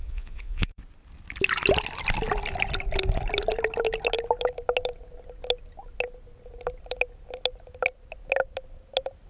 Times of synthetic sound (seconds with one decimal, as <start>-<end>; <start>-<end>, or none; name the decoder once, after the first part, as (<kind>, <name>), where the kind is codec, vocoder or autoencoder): 0.0-0.8 (vocoder, Vocos)